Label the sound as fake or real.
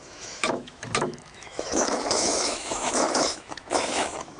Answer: fake